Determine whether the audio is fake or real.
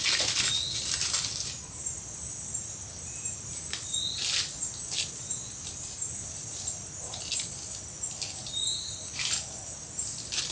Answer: real